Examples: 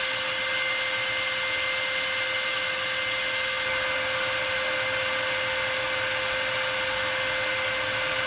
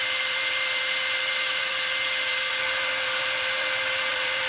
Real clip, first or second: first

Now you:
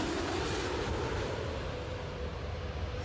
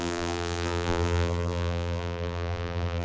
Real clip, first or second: first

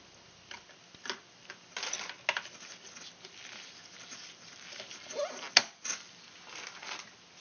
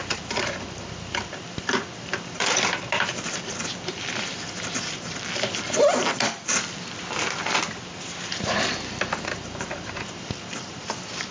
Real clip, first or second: first